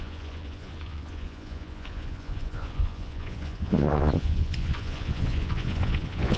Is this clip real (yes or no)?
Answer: no